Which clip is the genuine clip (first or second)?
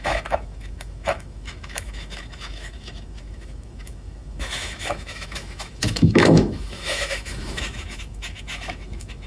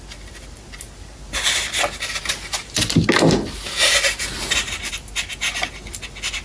second